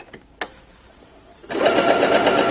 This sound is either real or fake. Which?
real